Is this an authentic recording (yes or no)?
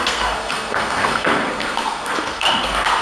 no